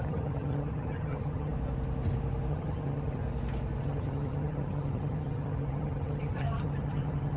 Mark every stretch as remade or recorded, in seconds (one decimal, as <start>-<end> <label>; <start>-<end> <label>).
0.0-1.5 remade; 1.5-2.5 recorded; 2.5-3.2 remade; 3.2-3.8 recorded; 3.8-7.4 remade